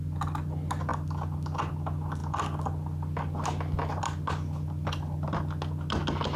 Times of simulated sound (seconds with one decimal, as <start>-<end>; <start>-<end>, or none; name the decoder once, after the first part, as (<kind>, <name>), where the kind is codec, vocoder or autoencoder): none